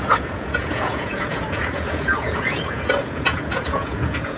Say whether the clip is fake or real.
fake